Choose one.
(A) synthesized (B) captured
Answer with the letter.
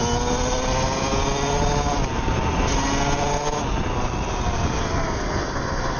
B